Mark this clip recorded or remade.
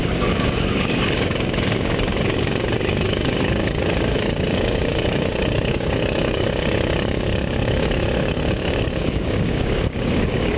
remade